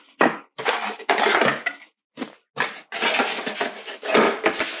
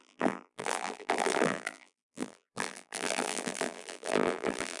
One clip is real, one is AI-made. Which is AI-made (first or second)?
second